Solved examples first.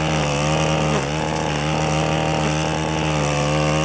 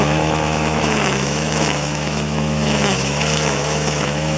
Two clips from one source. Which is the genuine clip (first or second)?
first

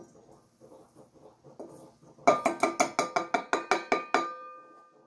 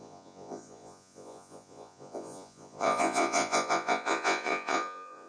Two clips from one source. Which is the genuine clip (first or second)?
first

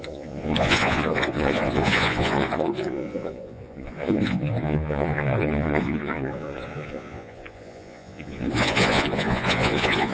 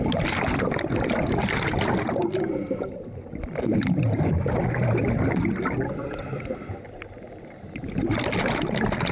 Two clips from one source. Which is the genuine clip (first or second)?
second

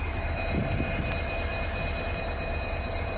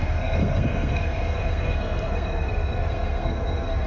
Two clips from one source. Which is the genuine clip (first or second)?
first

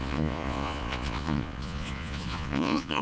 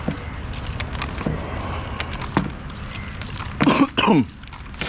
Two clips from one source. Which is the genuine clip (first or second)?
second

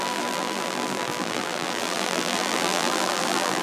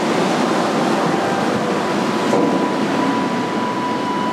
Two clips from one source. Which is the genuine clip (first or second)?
second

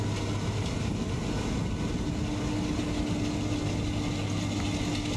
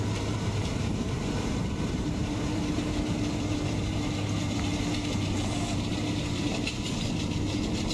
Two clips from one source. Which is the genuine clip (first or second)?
first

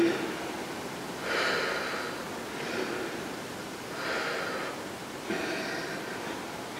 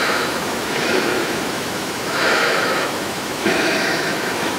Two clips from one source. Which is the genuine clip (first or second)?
first